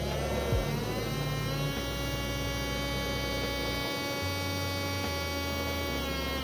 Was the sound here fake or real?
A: real